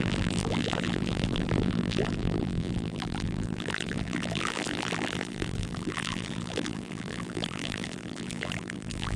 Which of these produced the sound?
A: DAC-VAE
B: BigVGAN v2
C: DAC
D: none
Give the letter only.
B